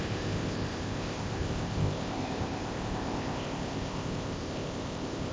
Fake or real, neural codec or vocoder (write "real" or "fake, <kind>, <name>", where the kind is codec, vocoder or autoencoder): fake, codec, ZipCodec